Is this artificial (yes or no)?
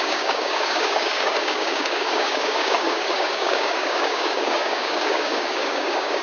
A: yes